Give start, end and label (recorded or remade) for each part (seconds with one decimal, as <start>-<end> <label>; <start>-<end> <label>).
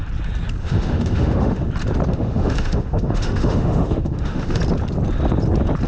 0.0-0.6 recorded; 0.6-1.7 remade; 1.7-2.1 recorded; 2.1-4.6 remade; 4.6-5.9 recorded